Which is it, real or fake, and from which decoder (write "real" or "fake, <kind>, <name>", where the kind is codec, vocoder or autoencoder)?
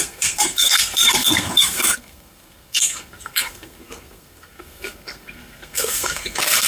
fake, codec, SNAC